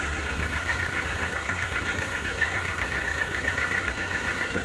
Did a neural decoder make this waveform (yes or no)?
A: yes